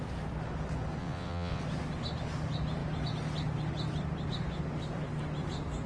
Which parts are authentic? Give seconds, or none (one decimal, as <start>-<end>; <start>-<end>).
0.0-1.0; 1.6-5.9